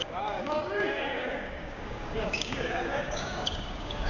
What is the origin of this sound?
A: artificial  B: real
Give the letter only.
A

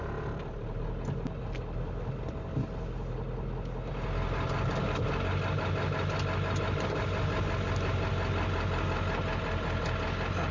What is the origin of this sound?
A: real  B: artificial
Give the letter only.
A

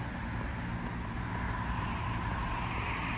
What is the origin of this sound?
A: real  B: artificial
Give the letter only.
A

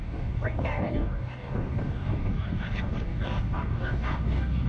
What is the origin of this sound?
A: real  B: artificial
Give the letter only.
B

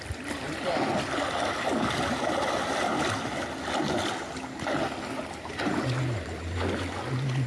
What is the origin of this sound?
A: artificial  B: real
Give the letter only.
B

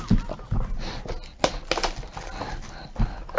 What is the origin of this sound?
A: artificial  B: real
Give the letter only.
B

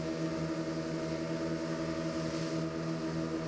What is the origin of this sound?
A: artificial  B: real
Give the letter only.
B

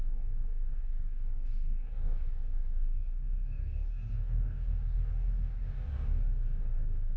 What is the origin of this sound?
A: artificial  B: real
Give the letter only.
A